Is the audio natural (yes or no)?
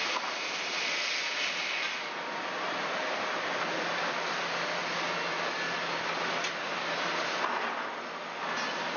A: yes